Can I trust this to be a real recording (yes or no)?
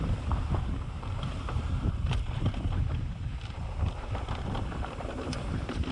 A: no